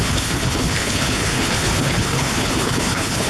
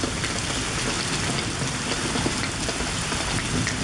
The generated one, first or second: first